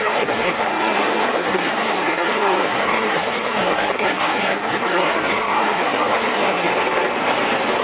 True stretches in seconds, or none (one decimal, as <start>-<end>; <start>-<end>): 6.7-7.8